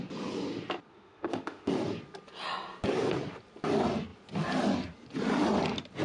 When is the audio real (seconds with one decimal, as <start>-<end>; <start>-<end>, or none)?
0.0-0.9; 1.7-6.0

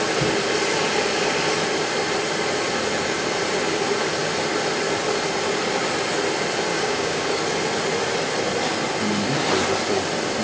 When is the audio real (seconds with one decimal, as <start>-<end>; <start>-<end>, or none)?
0.0-6.7; 7.4-10.4